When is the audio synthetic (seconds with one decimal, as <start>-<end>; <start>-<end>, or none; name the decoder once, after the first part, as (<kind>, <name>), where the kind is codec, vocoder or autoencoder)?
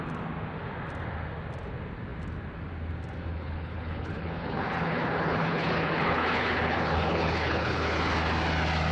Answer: 3.3-8.0 (codec, HILCodec)